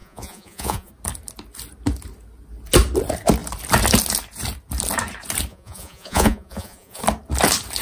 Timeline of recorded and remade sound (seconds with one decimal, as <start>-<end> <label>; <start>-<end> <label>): 0.0-0.9 remade; 0.9-5.5 recorded; 5.5-7.0 remade; 7.0-7.8 recorded